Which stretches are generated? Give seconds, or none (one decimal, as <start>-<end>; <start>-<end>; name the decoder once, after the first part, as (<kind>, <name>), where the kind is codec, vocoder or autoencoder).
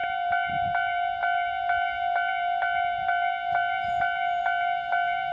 none